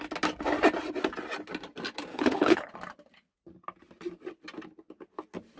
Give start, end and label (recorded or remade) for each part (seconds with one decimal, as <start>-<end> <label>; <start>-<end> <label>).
0.0-2.1 recorded; 2.1-2.7 remade; 2.7-5.6 recorded